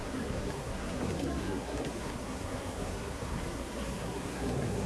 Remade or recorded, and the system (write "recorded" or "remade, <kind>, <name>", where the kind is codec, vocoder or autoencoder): remade, codec, SNAC